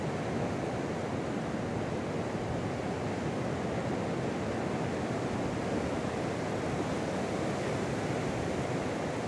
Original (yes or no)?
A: yes